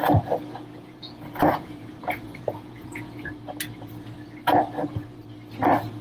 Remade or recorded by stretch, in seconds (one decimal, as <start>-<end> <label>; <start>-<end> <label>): 0.0-0.7 recorded; 0.7-3.3 remade; 3.3-6.0 recorded